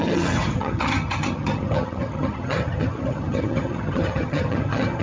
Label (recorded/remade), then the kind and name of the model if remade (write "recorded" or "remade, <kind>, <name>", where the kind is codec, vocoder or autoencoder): remade, vocoder, HiFi-GAN